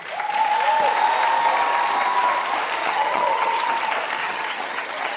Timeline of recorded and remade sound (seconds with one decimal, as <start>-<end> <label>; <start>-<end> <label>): 0.0-2.8 recorded; 2.8-3.7 remade; 3.7-4.2 recorded; 4.2-5.2 remade